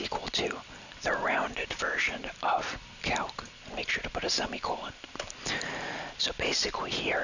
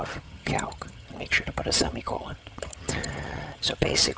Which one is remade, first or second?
second